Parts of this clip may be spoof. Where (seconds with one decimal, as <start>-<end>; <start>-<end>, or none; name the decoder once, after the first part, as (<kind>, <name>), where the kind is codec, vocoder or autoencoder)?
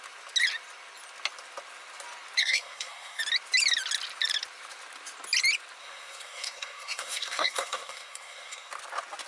2.4-3.2 (codec, SNAC); 5.8-8.7